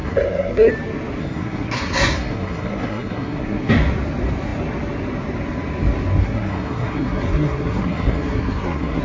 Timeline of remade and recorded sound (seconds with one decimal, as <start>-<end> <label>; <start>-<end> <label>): 0.0-0.7 remade; 0.7-1.2 recorded; 1.2-3.7 remade; 3.7-6.2 recorded; 6.2-9.0 remade